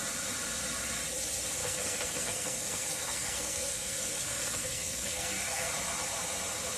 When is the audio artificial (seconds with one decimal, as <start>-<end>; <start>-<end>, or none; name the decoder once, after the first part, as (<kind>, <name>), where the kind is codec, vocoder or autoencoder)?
1.6-5.7 (codec, SNAC)

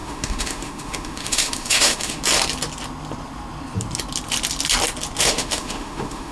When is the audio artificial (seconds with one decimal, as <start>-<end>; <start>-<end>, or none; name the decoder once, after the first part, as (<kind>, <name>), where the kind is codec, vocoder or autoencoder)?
0.0-2.2 (autoencoder, DAC-VAE); 5.2-6.3

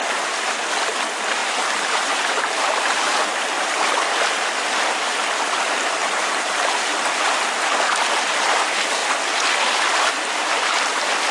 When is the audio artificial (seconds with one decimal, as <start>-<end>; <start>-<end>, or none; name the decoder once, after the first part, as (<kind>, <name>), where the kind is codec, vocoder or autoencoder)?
1.4-3.7 (vocoder, BigVGAN v2); 6.0-7.1

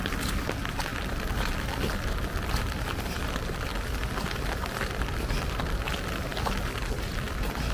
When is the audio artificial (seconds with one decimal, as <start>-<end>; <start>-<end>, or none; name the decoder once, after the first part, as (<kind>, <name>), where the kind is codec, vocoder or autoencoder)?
none

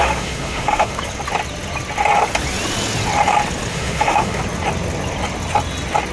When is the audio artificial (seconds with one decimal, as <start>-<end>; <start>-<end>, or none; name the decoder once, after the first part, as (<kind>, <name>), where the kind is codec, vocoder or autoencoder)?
0.0-1.0 (autoencoder, DAC-VAE); 3.7-4.4

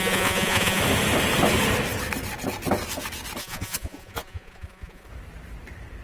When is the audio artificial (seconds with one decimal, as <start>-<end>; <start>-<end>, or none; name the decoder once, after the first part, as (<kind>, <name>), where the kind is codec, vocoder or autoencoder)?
0.0-0.8 (vocoder, Vocos); 3.4-5.1